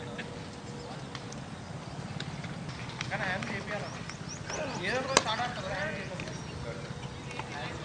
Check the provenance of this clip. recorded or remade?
recorded